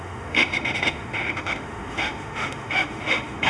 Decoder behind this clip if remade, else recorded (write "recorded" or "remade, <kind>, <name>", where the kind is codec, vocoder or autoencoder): remade, autoencoder, DAC-VAE